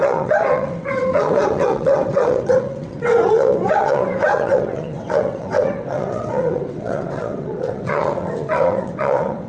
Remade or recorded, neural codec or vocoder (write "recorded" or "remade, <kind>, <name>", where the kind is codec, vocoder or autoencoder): remade, vocoder, WaveNeXt